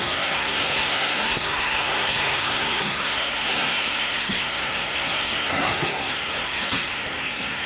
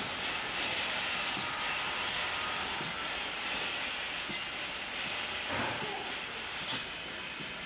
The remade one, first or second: first